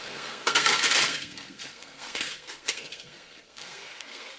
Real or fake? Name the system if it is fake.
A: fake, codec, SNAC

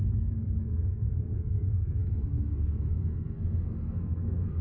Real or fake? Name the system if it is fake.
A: fake, codec, SNAC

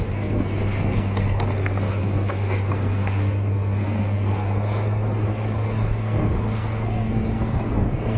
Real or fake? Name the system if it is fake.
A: fake, codec, SNAC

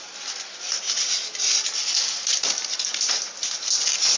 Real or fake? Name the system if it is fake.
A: real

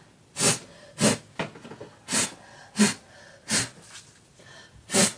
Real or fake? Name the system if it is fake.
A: real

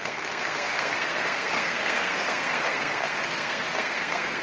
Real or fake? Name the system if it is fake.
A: fake, codec, SNAC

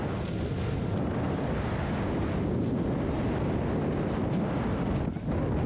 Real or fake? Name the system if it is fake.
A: real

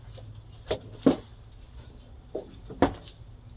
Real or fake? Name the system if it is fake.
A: real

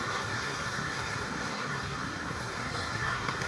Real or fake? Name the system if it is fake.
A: fake, codec, SNAC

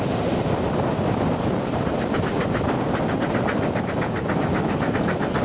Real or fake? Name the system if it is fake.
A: real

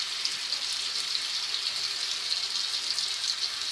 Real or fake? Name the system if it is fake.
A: real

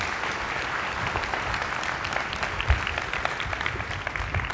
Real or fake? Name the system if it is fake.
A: real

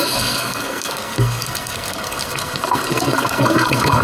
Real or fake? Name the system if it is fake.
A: fake, codec, SNAC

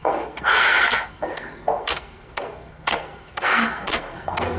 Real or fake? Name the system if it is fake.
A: fake, codec, SNAC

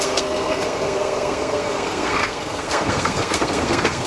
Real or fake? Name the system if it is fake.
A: fake, codec, SNAC